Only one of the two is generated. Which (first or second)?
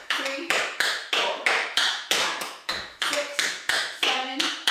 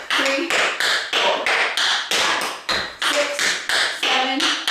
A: first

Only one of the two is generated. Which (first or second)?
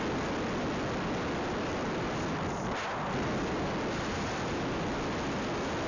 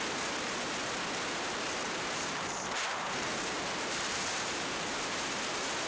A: second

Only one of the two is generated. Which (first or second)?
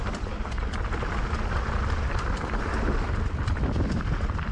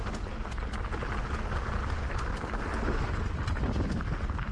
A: first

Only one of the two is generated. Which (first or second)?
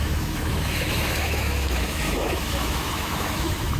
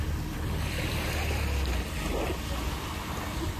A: first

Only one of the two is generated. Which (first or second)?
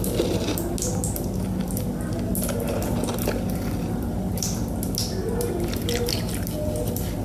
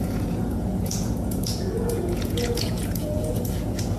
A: second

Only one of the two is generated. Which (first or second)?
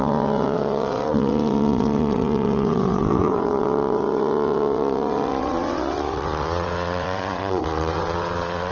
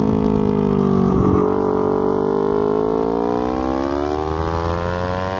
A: first